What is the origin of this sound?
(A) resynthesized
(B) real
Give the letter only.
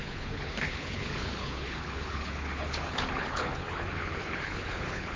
A